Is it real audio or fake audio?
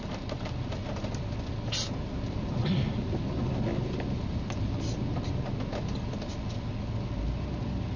real